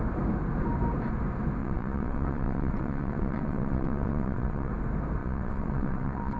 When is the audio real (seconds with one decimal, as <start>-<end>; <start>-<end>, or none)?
0.0-1.6; 4.7-5.2